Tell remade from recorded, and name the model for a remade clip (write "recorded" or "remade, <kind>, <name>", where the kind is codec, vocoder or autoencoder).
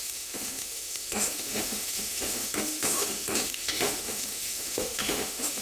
remade, autoencoder, DAC-VAE